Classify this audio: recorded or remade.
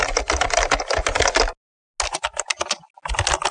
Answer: recorded